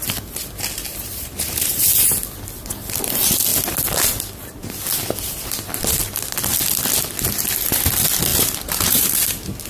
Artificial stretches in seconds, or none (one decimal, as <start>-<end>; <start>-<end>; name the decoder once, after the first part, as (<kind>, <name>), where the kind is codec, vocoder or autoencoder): 0.9-1.9 (vocoder, BigVGAN v2); 8.3-9.1